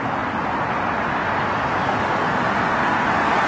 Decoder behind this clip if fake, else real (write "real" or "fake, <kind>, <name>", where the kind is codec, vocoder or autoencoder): real